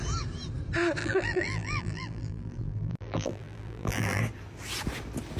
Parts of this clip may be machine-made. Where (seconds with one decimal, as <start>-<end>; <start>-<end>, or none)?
1.0-4.2